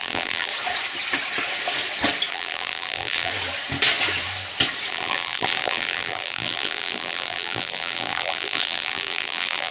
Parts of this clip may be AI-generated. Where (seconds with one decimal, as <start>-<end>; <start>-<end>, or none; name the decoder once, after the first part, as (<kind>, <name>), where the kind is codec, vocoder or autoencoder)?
0.0-0.5 (vocoder, BigVGAN v2); 2.3-3.3; 4.9-9.7